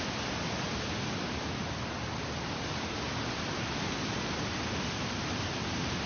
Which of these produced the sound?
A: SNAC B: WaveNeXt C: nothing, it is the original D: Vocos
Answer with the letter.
C